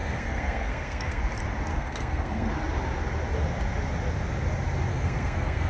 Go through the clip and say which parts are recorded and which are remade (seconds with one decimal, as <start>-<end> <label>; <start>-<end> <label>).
0.0-1.2 remade; 1.2-1.7 recorded; 1.7-2.5 remade; 2.5-4.9 recorded; 4.9-5.7 remade